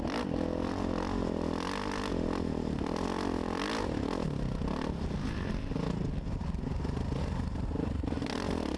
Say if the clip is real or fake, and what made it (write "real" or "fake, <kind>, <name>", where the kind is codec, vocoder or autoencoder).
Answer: real